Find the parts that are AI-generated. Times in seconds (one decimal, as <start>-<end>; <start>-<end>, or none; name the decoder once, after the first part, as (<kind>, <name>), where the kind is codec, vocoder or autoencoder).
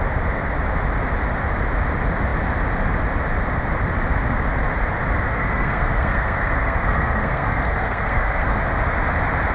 5.3-8.6 (codec, SNAC)